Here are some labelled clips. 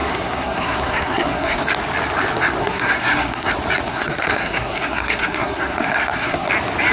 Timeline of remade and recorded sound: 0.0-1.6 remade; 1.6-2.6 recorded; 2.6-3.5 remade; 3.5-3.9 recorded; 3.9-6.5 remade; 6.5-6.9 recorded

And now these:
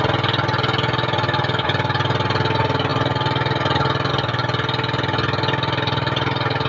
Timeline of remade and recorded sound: 0.0-6.7 recorded

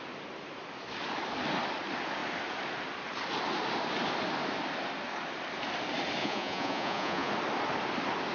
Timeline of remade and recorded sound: 0.0-6.2 recorded; 6.2-7.3 remade; 7.3-8.3 recorded

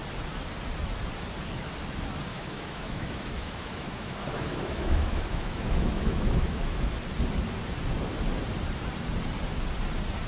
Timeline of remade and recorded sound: 0.0-2.3 recorded; 2.3-6.9 remade; 6.9-10.3 recorded

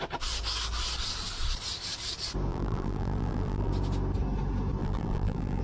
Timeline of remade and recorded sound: 0.0-2.5 recorded; 2.5-3.7 remade; 3.7-4.8 recorded; 4.8-5.6 remade

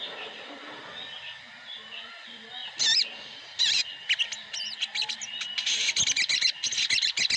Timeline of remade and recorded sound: 0.0-7.4 recorded

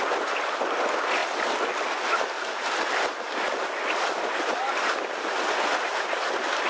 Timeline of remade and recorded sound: 0.0-6.7 recorded